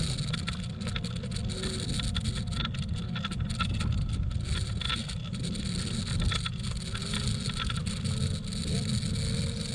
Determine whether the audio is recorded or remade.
recorded